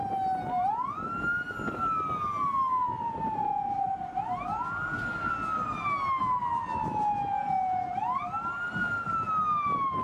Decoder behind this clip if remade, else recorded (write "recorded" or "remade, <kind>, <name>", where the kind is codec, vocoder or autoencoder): recorded